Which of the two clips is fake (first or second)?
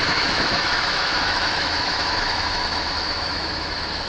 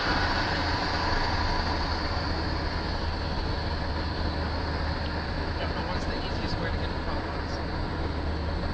first